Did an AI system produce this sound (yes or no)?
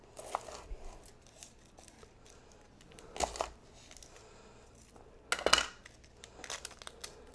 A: no